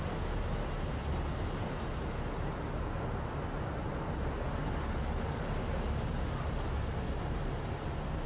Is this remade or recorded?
recorded